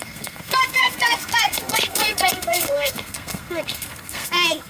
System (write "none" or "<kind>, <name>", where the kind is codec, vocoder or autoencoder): codec, SNAC